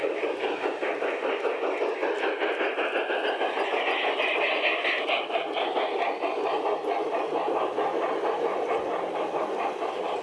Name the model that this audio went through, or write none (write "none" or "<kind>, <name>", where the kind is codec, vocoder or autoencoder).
none